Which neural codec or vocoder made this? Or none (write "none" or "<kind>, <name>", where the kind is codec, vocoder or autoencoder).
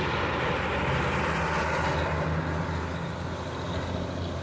none